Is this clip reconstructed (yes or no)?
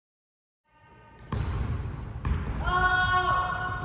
no